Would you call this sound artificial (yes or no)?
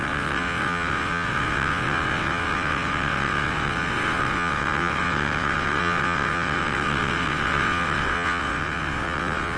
yes